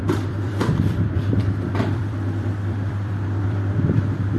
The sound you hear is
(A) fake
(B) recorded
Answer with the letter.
A